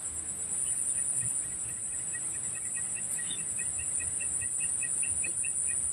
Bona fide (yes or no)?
yes